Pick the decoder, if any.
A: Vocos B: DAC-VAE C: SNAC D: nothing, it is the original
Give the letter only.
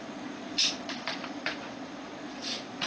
A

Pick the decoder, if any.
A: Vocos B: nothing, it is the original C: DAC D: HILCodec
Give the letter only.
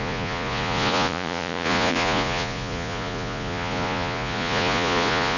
A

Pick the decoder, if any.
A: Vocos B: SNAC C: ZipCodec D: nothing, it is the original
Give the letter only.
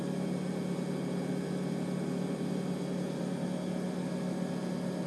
D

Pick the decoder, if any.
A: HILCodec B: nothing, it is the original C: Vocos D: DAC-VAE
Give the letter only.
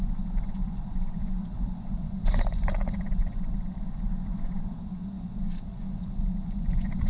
C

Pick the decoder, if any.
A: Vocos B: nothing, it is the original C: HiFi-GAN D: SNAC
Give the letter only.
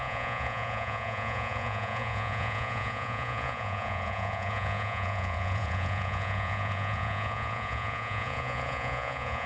A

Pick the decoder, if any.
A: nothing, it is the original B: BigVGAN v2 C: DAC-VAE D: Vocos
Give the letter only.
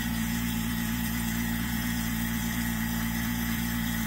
D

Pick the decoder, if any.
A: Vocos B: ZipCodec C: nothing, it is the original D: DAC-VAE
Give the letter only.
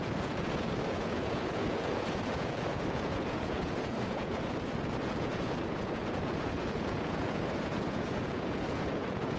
A